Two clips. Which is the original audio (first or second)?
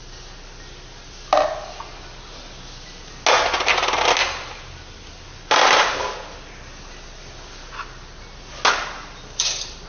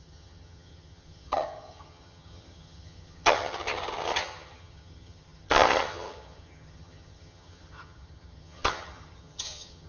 first